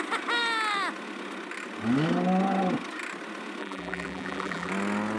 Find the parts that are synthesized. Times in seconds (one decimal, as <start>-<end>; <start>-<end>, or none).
3.6-4.7